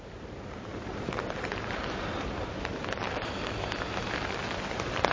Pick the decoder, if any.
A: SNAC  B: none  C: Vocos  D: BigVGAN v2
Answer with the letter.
D